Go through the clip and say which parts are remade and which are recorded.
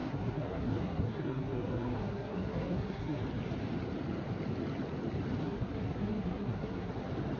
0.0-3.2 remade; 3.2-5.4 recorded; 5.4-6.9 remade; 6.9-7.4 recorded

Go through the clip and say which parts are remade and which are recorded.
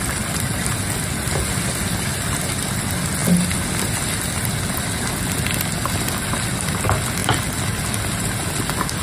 0.0-9.0 recorded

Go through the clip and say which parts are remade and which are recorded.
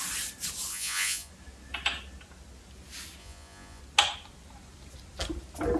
0.0-0.7 recorded; 0.7-1.3 remade; 1.3-3.2 recorded; 3.2-3.8 remade; 3.8-5.8 recorded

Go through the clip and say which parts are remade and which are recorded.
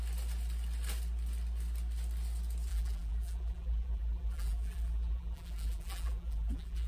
0.0-2.7 recorded; 2.7-6.9 remade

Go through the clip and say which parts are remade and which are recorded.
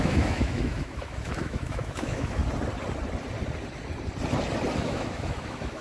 0.0-2.4 remade; 2.4-4.8 recorded; 4.8-5.8 remade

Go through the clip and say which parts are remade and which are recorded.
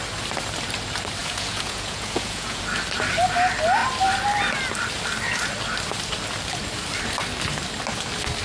0.0-1.2 recorded; 1.2-2.6 remade; 2.6-8.4 recorded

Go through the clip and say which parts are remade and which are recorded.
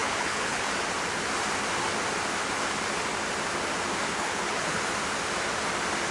0.0-0.7 remade; 0.7-4.1 recorded; 4.1-4.8 remade; 4.8-6.1 recorded